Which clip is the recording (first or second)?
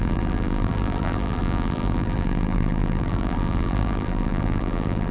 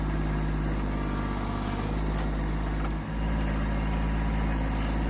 second